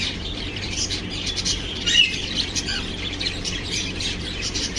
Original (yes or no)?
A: no